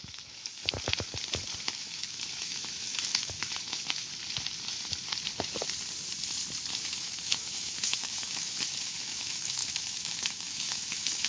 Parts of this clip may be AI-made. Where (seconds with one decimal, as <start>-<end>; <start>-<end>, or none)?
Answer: 0.0-0.6; 1.6-4.1; 6.9-11.3

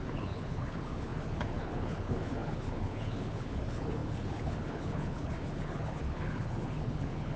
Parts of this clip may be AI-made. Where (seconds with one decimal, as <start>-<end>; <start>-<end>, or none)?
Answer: 0.0-7.4

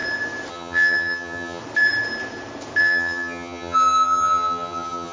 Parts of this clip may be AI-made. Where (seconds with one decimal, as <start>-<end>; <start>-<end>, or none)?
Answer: 0.5-1.6; 2.8-5.1